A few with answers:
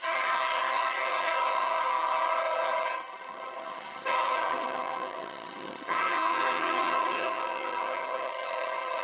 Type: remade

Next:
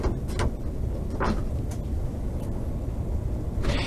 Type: recorded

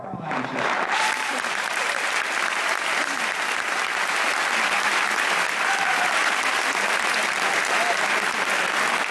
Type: recorded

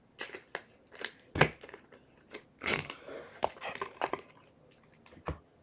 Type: recorded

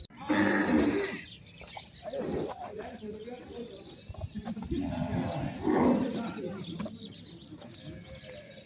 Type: recorded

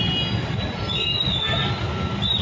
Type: recorded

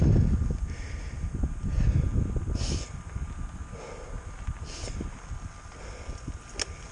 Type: recorded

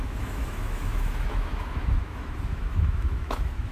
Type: remade